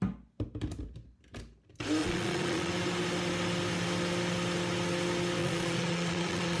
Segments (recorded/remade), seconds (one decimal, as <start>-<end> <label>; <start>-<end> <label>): 0.0-2.0 recorded; 2.0-2.7 remade; 2.7-5.4 recorded; 5.4-6.6 remade